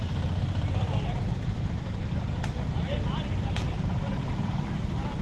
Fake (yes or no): no